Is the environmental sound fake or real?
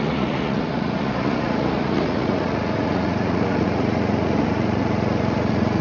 fake